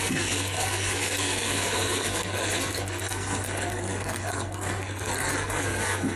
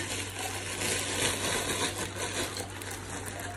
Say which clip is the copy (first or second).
first